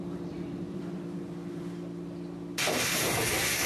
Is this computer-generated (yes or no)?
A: no